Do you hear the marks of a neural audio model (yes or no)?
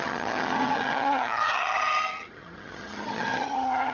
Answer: yes